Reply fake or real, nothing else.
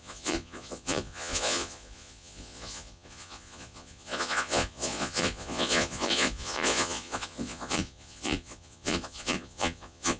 fake